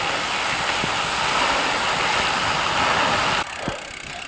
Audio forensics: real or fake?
real